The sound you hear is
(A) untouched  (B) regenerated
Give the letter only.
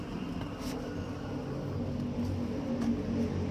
A